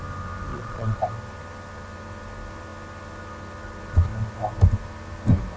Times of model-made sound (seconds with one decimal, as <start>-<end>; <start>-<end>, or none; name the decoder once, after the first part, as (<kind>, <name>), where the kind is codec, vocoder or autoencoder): 0.5-1.0 (vocoder, Vocos)